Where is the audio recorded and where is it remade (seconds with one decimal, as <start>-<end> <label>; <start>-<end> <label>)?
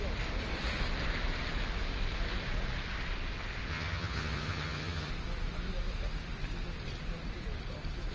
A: 0.0-3.7 recorded; 3.7-5.1 remade; 5.1-8.1 recorded